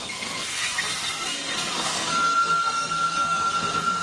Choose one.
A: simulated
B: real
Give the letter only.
A